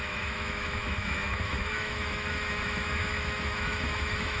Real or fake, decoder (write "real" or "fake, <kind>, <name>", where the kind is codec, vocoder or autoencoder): fake, autoencoder, DAC-VAE